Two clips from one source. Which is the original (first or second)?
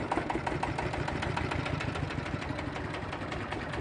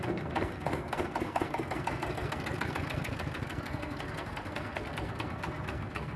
first